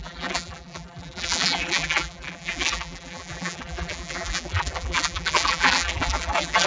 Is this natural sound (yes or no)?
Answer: no